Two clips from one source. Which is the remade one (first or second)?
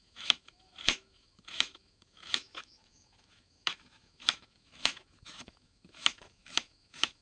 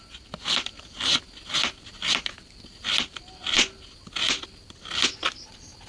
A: first